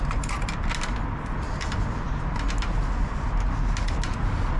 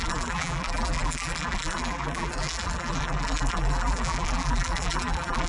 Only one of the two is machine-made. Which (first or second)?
second